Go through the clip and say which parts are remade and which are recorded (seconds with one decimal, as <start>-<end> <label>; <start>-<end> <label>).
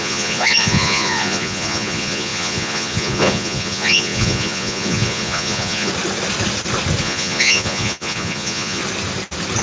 0.0-5.9 remade; 5.9-7.0 recorded; 7.0-8.8 remade; 8.8-9.6 recorded